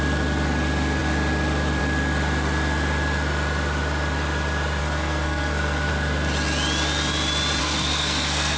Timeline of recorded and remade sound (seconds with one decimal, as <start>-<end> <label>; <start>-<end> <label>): 0.0-4.8 recorded; 4.8-5.9 remade; 5.9-7.6 recorded; 7.6-8.6 remade